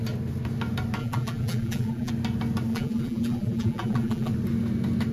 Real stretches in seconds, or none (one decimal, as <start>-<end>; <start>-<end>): 0.0-1.0; 2.1-2.7; 4.3-5.1